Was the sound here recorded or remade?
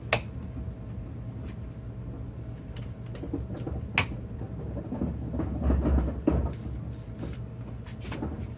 recorded